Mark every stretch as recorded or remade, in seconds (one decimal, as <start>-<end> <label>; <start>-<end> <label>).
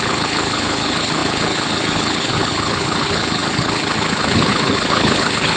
0.0-5.6 remade